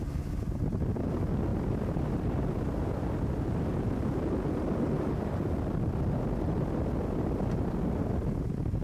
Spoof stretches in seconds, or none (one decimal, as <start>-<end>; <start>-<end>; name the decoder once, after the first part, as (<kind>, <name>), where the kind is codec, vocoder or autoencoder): 1.5-2.3 (vocoder, BigVGAN v2)